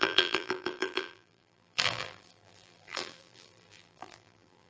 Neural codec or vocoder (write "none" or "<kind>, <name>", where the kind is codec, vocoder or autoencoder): vocoder, BigVGAN v2